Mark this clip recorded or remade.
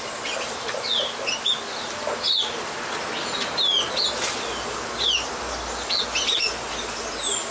recorded